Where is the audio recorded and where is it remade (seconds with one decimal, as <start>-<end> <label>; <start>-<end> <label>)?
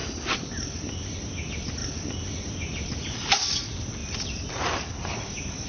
0.0-1.2 remade; 1.2-4.0 recorded; 4.0-4.6 remade; 4.6-5.7 recorded